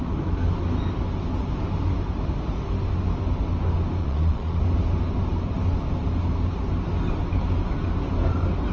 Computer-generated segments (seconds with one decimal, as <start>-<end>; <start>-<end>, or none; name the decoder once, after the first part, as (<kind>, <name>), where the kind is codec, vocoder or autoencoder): 4.0-4.6 (vocoder, Vocos)